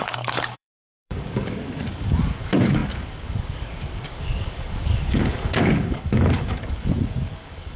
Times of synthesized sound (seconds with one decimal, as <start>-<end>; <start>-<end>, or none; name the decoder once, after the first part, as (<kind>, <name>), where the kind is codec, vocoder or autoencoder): 0.0-7.8 (codec, DAC)